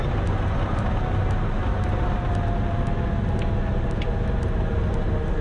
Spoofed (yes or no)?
no